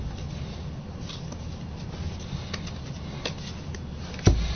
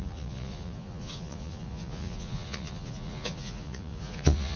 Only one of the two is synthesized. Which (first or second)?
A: second